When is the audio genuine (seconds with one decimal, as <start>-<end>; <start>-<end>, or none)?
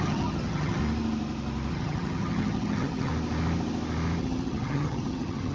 0.8-1.7; 3.1-4.2